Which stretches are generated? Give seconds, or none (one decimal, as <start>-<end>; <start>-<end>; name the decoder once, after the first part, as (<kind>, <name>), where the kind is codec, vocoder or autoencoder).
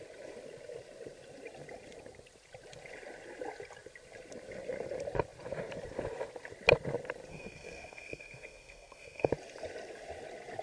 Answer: 7.3-9.3 (codec, SNAC)